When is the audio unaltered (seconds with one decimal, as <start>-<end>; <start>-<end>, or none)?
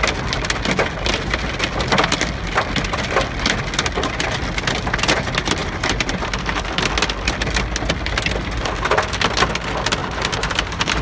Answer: 0.0-5.6; 6.6-10.0